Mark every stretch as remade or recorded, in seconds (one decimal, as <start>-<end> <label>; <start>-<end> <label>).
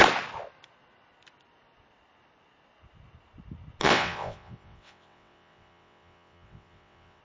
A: 0.0-3.8 recorded; 3.8-7.2 remade